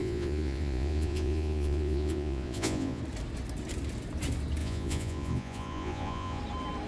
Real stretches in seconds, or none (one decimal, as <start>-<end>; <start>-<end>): 3.0-4.6; 6.4-6.9